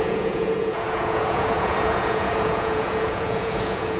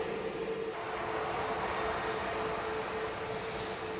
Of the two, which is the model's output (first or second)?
first